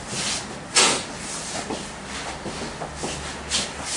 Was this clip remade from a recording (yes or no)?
no